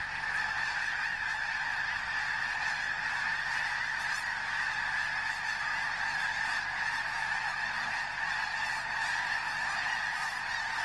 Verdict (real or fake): real